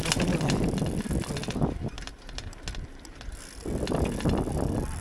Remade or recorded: recorded